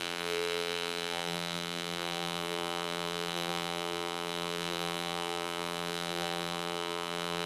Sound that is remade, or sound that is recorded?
remade